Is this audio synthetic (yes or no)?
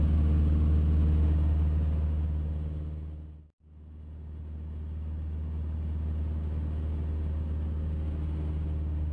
no